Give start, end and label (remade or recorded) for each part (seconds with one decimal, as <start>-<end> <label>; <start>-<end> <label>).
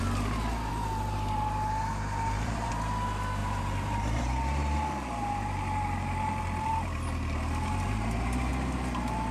0.0-0.7 recorded; 0.7-2.7 remade; 2.7-3.4 recorded; 3.4-8.5 remade; 8.5-9.3 recorded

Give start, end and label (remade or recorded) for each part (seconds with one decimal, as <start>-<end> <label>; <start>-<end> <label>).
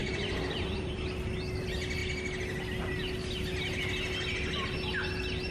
0.0-1.0 remade; 1.0-5.5 recorded